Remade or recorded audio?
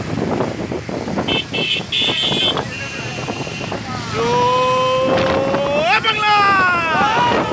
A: recorded